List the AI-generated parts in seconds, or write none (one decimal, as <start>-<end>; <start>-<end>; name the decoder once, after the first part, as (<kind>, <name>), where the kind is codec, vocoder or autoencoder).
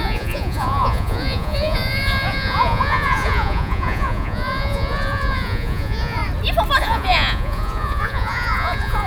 0.0-6.2 (vocoder, Vocos); 6.8-9.1